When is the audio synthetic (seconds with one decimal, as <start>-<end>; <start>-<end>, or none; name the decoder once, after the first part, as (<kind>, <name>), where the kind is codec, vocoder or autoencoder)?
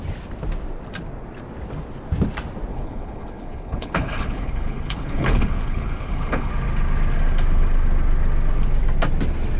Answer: 2.7-6.5 (codec, HILCodec)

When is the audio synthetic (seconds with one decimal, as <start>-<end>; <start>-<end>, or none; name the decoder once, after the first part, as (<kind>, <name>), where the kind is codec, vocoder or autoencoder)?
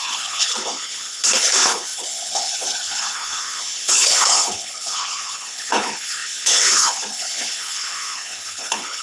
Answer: 0.0-9.0 (codec, HILCodec)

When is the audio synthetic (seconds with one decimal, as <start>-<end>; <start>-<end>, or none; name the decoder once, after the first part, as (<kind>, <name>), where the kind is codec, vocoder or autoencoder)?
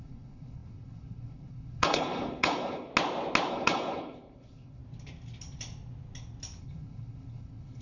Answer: 0.0-2.9 (codec, HILCodec); 3.5-4.8; 6.6-7.8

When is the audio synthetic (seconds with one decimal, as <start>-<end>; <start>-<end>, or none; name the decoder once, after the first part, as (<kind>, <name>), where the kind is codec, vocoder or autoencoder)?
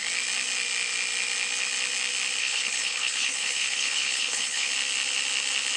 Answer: 2.4-4.7 (codec, HILCodec)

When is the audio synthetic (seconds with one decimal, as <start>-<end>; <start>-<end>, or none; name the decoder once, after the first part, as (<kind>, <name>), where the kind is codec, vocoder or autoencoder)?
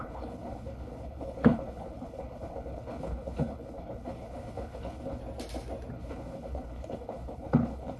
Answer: 0.0-5.2 (codec, HILCodec); 5.9-8.0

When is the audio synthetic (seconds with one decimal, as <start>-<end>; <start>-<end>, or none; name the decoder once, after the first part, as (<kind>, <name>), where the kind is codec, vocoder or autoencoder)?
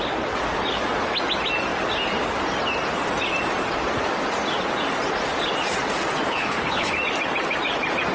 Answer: 6.3-6.9 (codec, HILCodec)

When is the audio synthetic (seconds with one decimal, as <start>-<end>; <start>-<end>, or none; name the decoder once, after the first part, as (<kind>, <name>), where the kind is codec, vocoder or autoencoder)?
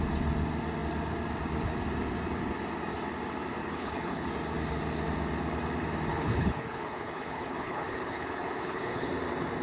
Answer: 3.6-4.3 (codec, HILCodec); 6.1-9.1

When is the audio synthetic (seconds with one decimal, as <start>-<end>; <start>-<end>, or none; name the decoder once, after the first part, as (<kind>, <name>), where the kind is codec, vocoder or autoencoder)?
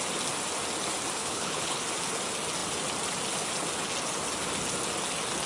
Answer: 1.2-1.8 (codec, HILCodec)